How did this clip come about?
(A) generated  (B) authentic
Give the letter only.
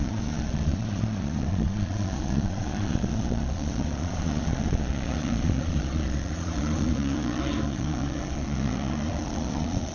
A